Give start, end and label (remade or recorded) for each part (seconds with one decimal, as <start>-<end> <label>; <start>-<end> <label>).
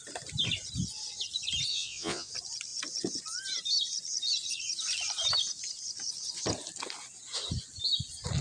0.0-1.7 recorded; 1.7-2.3 remade; 2.3-8.4 recorded